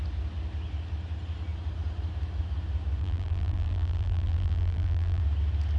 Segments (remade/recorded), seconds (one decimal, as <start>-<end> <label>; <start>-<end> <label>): 0.0-3.0 recorded; 3.0-5.2 remade; 5.2-5.8 recorded